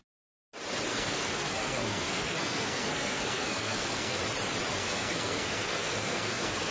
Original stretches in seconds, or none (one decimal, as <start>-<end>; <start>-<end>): 0.0-0.9; 4.2-4.7